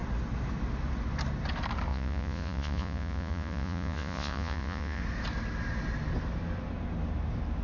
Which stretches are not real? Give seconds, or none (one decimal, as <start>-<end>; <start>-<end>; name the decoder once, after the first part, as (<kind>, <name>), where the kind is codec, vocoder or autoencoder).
1.9-5.0 (vocoder, Vocos)